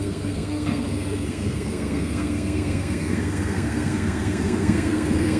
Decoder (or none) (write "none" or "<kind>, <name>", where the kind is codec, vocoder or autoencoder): codec, SNAC